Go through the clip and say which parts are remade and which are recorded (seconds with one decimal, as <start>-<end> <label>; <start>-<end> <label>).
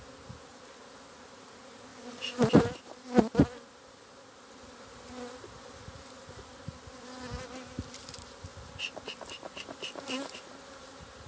0.0-11.3 recorded